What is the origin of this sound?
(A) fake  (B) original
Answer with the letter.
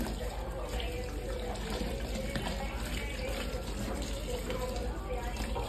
B